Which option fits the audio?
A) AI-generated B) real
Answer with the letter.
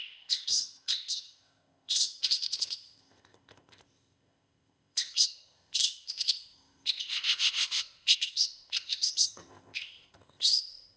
A